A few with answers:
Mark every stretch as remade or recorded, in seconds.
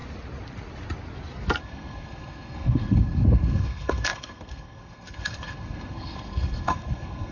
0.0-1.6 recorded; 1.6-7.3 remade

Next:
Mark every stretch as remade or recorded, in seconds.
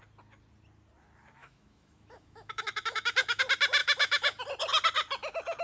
0.0-1.4 recorded; 1.4-3.4 remade; 3.4-3.8 recorded; 3.8-4.4 remade; 4.4-5.6 recorded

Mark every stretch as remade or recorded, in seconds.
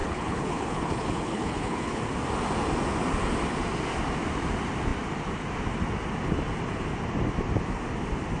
0.0-2.0 remade; 2.0-8.4 recorded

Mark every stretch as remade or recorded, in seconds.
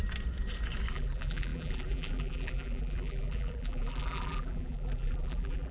0.0-0.9 recorded; 0.9-5.7 remade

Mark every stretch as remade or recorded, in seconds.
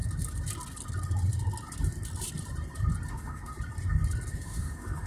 0.0-3.1 recorded; 3.1-3.5 remade; 3.5-4.3 recorded; 4.3-5.1 remade